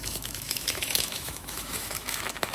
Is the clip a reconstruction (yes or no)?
yes